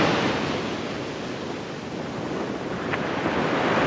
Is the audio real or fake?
real